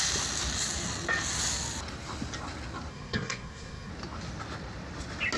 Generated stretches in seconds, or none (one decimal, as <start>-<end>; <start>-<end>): 2.9-3.9